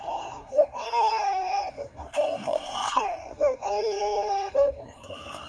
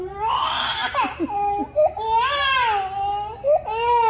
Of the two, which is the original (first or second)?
second